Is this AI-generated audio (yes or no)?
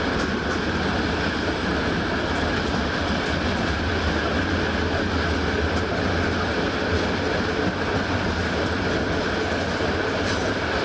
no